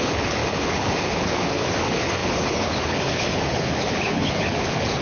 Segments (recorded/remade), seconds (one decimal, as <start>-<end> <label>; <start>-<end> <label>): 0.0-5.0 remade